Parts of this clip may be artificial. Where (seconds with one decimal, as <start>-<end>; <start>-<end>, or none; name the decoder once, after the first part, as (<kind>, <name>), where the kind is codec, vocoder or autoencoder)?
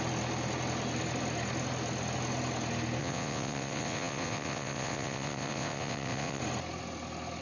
3.0-6.4 (vocoder, WaveNeXt)